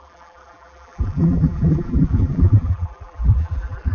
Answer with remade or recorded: remade